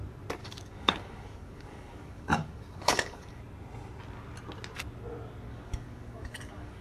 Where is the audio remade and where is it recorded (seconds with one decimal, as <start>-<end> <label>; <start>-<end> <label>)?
0.0-0.4 recorded; 0.4-3.4 remade; 3.4-5.5 recorded; 5.5-6.8 remade